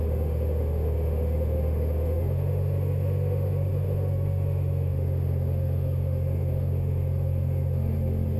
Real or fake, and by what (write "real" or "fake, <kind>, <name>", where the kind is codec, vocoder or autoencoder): fake, autoencoder, DAC-VAE